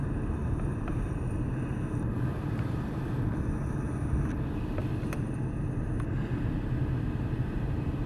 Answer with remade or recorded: recorded